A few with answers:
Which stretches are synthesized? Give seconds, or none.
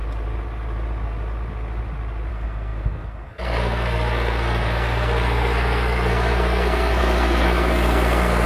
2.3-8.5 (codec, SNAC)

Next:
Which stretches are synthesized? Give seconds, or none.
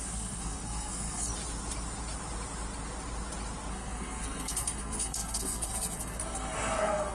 0.0-1.3 (codec, SNAC); 3.7-7.1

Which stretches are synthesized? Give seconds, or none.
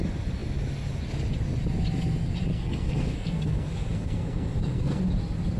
2.5-5.0 (codec, SNAC)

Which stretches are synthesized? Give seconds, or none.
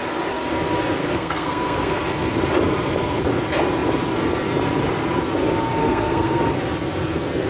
1.0-2.0 (codec, SNAC); 5.8-6.4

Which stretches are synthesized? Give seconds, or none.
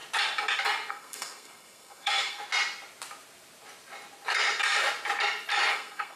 0.9-2.4 (codec, SNAC); 5.7-6.2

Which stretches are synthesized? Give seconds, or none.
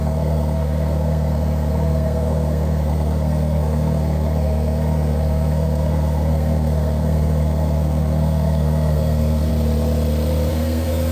0.0-9.5 (codec, SNAC); 10.5-11.1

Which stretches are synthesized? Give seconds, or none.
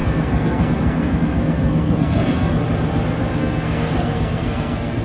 0.0-2.6 (codec, SNAC); 3.4-5.0